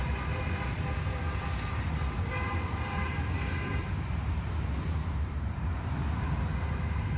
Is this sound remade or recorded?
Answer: remade